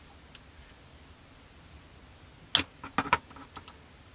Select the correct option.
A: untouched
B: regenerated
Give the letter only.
A